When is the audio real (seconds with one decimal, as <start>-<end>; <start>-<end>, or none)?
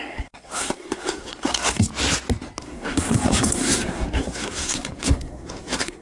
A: 1.9-2.6